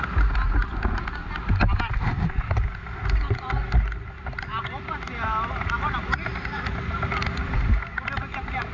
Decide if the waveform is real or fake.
real